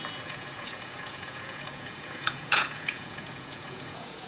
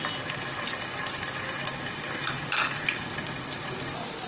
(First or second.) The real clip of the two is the second